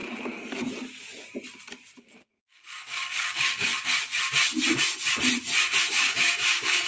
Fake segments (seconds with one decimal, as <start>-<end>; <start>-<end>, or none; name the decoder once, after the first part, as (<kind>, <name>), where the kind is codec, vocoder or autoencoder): 2.0-3.7 (codec, DAC); 5.9-6.9